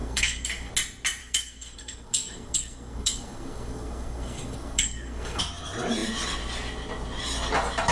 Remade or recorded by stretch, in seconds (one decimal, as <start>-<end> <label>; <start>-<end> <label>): 0.0-0.7 remade; 0.7-1.2 recorded; 1.2-5.4 remade; 5.4-7.9 recorded